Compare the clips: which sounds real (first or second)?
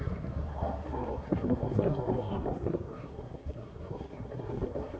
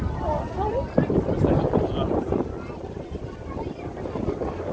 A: second